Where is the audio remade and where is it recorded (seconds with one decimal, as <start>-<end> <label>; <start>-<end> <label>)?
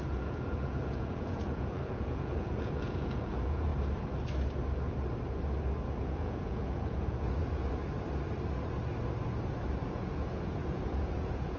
0.0-3.7 remade; 3.7-6.0 recorded; 6.0-7.6 remade; 7.6-9.8 recorded; 9.8-11.6 remade